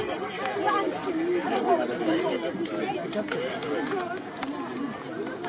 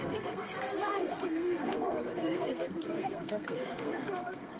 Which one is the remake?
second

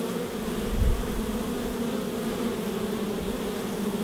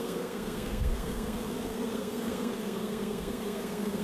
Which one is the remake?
second